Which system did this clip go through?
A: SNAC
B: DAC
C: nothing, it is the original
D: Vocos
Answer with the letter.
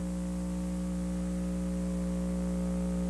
C